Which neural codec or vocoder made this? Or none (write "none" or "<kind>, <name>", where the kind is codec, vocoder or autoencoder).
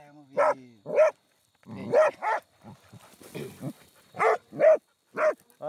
none